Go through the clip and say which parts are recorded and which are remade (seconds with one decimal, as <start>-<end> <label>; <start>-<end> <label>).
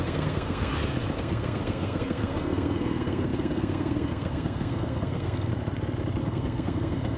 0.0-0.7 remade; 0.7-1.2 recorded; 1.2-5.5 remade; 5.5-6.2 recorded; 6.2-7.2 remade